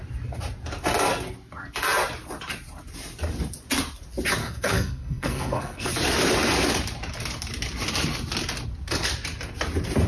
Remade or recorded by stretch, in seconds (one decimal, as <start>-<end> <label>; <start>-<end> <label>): 0.0-4.4 recorded; 4.4-5.9 remade; 5.9-10.1 recorded